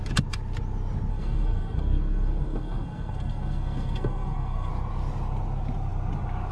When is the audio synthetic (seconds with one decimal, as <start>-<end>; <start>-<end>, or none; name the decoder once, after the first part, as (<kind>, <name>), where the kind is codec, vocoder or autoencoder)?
1.1-4.7 (codec, SNAC)